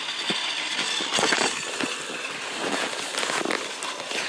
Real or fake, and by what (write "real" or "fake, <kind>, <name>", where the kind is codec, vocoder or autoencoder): real